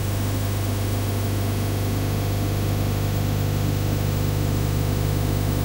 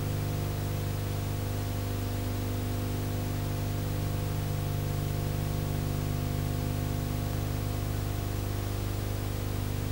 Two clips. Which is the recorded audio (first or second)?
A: second